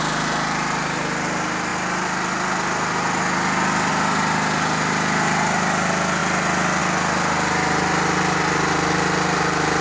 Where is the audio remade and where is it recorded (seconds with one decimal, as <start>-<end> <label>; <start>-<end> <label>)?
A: 0.0-9.8 recorded